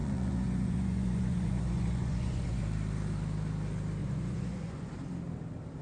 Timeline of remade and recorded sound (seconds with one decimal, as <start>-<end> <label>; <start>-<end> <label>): 0.0-2.6 remade; 2.6-4.0 recorded; 4.0-4.9 remade; 4.9-5.8 recorded